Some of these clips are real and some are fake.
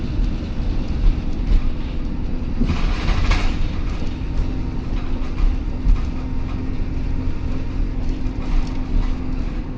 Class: real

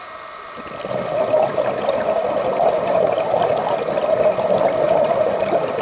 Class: real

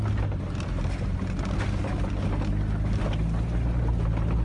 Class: real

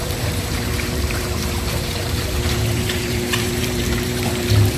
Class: fake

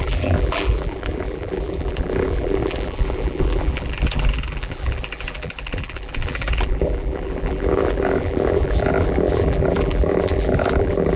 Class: fake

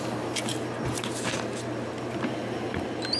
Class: real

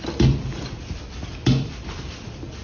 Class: fake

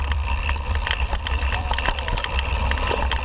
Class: fake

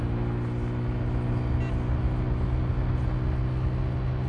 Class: real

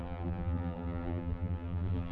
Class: fake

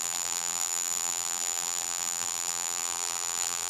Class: fake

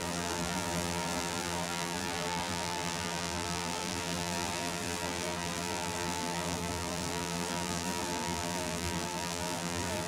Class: fake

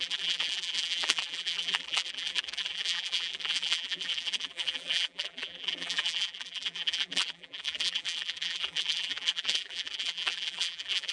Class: fake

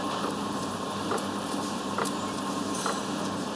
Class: fake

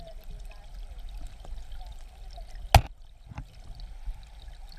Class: real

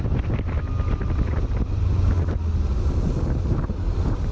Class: real